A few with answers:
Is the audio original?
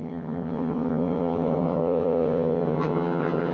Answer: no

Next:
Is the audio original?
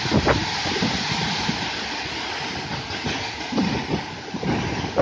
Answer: yes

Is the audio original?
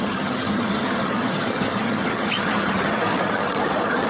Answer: no